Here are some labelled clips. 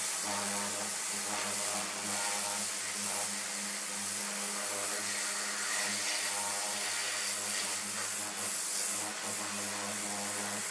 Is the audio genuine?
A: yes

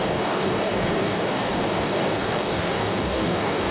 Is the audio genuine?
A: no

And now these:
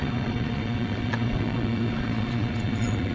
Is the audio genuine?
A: no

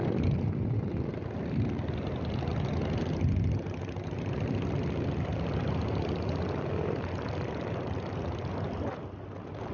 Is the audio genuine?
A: yes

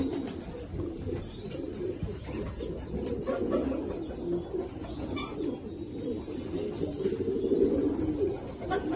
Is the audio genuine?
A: yes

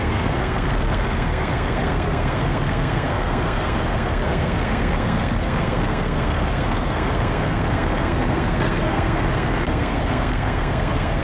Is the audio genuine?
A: no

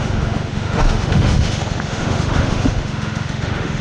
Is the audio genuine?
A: no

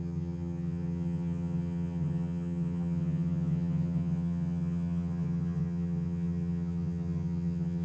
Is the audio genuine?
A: no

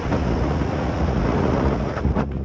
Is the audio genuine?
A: no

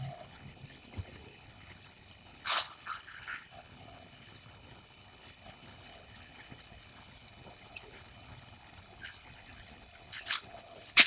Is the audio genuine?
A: no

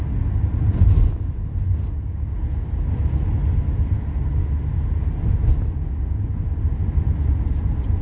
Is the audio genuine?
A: yes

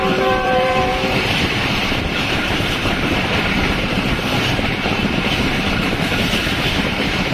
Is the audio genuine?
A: no